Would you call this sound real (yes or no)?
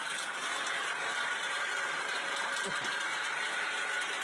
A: no